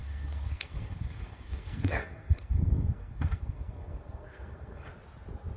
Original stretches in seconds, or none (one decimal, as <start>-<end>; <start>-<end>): 4.9-5.6